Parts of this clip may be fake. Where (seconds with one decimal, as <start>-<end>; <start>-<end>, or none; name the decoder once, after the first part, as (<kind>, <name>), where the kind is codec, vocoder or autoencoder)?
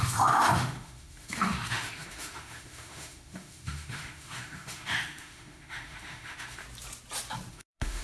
0.0-6.6 (autoencoder, DAC-VAE); 7.5-8.0